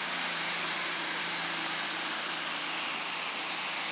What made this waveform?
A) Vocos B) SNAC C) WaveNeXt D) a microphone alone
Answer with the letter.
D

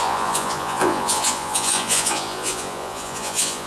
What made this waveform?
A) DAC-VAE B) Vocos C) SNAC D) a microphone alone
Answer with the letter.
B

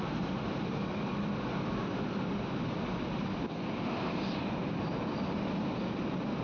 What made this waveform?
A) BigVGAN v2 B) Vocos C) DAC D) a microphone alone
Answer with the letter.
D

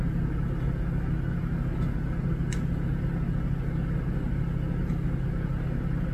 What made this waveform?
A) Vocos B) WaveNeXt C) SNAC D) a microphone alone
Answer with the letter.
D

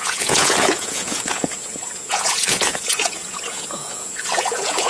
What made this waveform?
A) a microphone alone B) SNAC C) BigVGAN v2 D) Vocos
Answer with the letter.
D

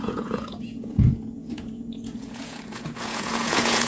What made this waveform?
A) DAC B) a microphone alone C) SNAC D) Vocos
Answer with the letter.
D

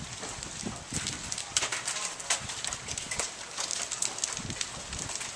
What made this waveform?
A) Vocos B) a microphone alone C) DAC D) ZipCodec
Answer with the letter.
B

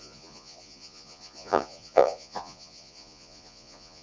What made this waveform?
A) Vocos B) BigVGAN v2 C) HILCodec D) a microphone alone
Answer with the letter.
A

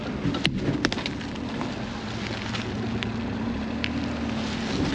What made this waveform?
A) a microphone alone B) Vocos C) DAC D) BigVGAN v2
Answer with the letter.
A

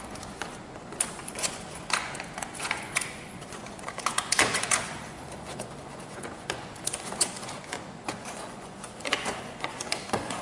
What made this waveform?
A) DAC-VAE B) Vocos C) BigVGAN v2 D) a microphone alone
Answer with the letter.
B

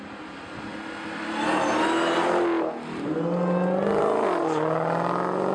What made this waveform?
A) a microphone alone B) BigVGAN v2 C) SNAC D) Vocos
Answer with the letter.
A